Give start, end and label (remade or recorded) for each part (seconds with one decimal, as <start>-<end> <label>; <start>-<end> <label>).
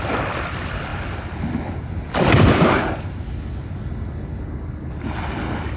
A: 0.0-5.8 recorded